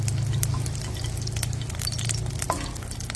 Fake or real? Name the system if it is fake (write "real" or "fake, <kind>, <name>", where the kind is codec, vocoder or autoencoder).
real